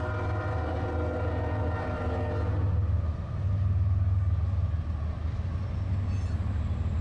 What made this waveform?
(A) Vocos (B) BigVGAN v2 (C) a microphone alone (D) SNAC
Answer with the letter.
C